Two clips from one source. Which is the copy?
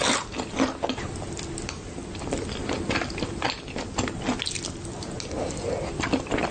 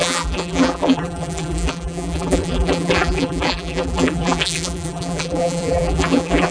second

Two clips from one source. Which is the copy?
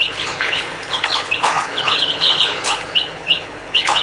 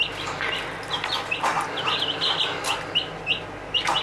first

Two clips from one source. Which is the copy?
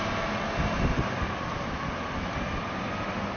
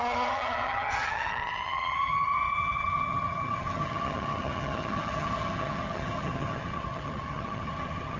second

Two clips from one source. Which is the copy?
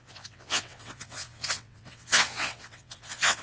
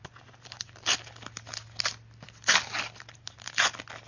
first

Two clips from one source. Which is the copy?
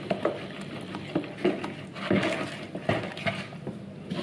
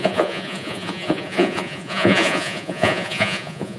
second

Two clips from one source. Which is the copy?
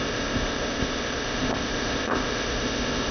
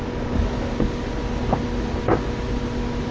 first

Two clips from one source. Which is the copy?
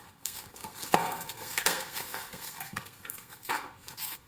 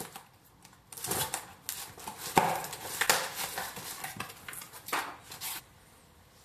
first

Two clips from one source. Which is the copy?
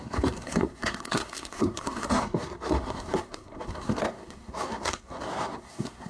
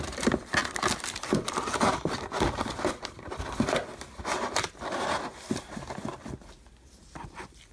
first